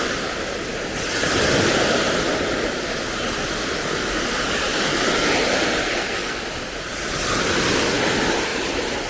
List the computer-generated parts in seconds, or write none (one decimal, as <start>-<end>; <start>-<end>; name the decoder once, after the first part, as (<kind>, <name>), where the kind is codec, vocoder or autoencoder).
5.8-6.4 (codec, SNAC)